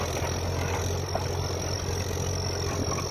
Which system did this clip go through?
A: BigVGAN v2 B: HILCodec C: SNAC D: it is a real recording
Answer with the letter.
D